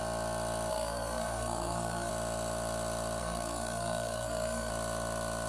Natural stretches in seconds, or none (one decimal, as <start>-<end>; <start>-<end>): 0.0-0.7; 2.1-3.2; 4.7-5.5